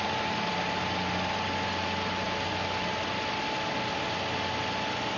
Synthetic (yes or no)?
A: no